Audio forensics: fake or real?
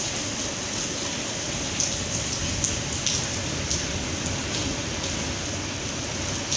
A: real